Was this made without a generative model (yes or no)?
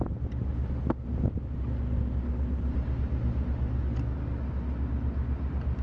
yes